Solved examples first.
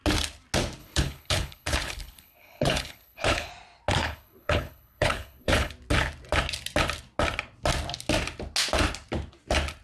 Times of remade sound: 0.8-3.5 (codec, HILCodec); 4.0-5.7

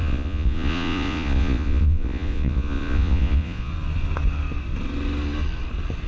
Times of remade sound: 0.0-3.7 (vocoder, Vocos)

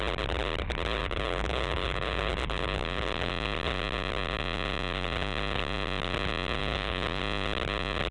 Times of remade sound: 1.0-3.3 (codec, DAC); 6.6-7.2

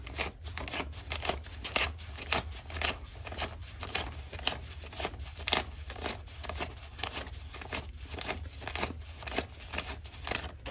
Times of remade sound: 3.6-4.1 (vocoder, BigVGAN v2)

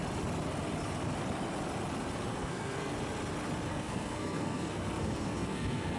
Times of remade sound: 2.3-2.9 (codec, SNAC); 3.7-6.0